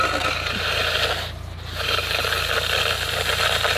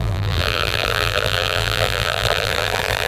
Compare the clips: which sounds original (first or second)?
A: first